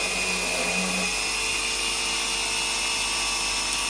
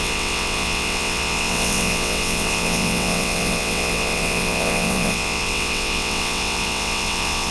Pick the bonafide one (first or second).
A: first